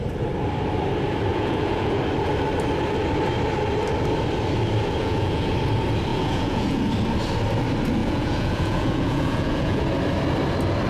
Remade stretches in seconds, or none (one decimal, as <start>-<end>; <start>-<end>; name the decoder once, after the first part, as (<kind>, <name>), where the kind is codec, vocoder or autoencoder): 1.3-2.0 (vocoder, Vocos); 5.0-5.5; 6.1-6.9; 8.0-9.8